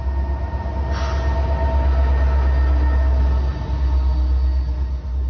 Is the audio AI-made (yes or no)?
no